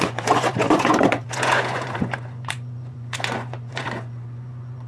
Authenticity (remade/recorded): remade